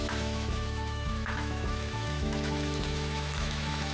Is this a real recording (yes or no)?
no